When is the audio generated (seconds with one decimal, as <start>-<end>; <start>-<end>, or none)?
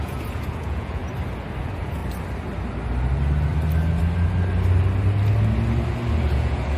0.0-1.0; 1.6-2.0; 6.1-6.8